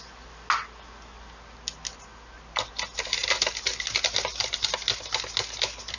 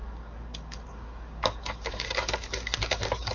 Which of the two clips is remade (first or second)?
second